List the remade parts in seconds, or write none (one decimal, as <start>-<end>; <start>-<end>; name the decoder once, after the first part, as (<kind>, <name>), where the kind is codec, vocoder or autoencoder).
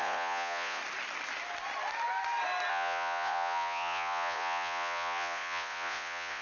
0.0-0.8 (vocoder, Vocos); 2.7-6.4